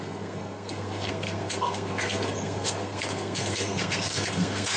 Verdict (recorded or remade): remade